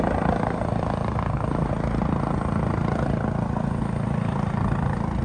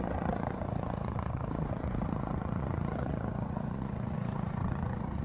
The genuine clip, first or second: first